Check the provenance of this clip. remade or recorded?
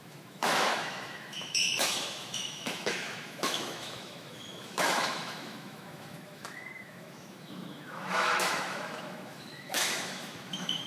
remade